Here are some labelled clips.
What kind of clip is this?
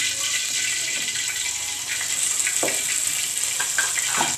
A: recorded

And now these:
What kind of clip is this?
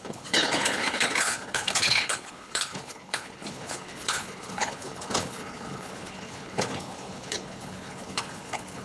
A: remade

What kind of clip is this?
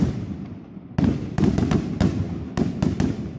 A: recorded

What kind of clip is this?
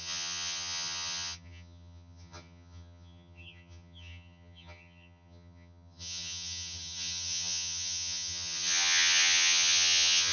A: remade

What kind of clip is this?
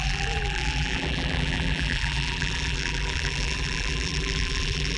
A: remade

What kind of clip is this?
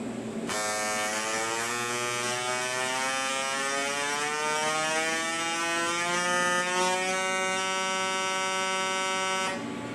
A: recorded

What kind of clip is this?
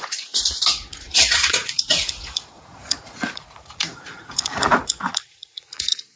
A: remade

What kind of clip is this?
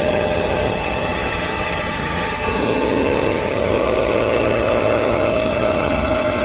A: remade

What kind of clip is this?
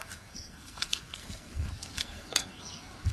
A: remade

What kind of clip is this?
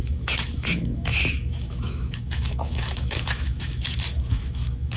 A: remade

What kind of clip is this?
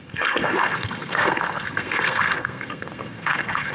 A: remade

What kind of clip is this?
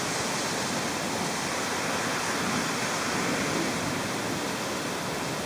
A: recorded